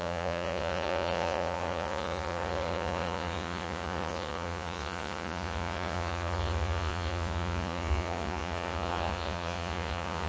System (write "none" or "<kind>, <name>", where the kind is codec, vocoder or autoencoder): vocoder, Vocos